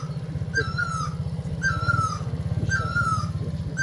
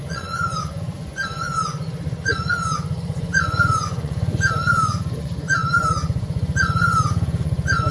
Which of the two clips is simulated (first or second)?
second